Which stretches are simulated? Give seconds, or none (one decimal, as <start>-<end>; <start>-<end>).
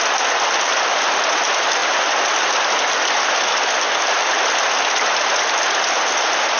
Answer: none